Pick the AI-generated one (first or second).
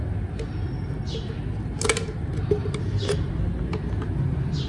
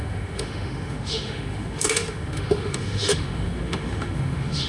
second